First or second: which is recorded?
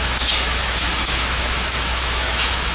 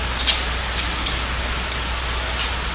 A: second